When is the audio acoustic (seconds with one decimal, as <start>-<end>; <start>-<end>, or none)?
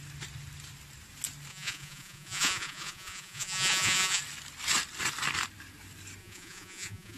0.0-1.5; 4.2-6.2